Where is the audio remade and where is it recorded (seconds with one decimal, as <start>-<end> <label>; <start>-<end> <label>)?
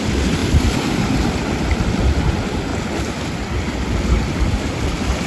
0.0-2.7 remade; 2.7-3.3 recorded; 3.3-5.3 remade